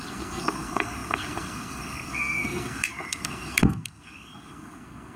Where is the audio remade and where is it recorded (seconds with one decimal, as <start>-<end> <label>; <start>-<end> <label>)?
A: 0.0-5.2 remade